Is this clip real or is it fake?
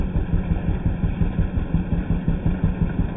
real